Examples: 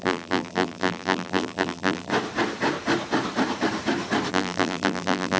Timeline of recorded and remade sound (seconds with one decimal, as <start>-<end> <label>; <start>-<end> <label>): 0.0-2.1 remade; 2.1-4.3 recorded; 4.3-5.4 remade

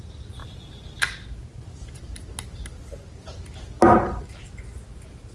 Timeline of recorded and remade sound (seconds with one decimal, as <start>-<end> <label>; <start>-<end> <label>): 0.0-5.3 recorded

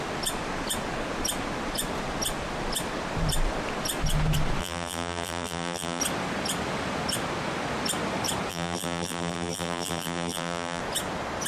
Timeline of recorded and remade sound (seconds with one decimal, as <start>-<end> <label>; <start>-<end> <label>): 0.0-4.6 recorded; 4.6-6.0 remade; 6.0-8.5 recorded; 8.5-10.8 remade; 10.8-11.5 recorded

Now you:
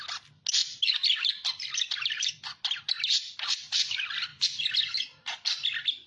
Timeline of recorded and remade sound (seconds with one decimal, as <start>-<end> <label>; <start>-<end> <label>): 0.0-0.6 recorded; 0.6-3.8 remade; 3.8-6.1 recorded